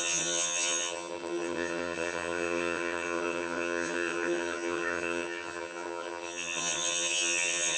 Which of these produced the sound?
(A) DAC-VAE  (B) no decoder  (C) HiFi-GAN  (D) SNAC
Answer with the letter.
C